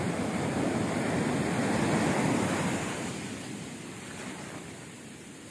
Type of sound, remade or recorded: remade